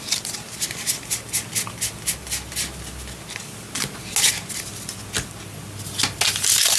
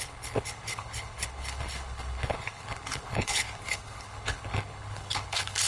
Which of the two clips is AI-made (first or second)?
second